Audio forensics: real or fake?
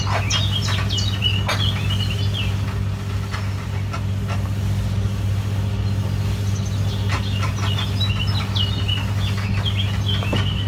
real